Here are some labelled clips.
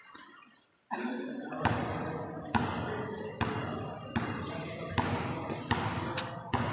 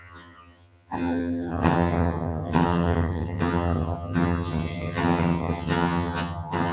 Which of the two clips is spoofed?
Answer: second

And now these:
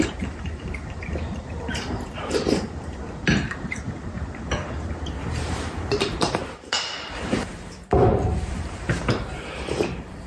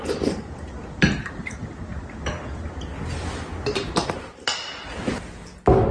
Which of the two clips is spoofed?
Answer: first